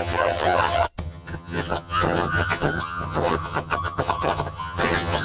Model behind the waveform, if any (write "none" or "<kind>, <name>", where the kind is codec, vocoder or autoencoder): vocoder, HiFi-GAN